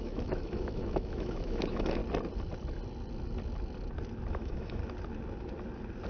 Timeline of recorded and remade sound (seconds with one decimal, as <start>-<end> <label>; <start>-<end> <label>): 0.0-2.0 remade; 2.0-4.3 recorded; 4.3-4.8 remade; 4.8-6.1 recorded